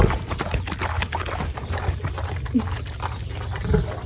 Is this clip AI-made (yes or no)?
no